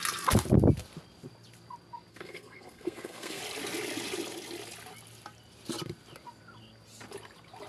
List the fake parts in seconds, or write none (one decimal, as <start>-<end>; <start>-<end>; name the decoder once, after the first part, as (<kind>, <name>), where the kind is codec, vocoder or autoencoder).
2.1-3.4 (codec, SNAC)